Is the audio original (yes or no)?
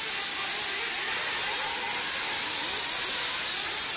yes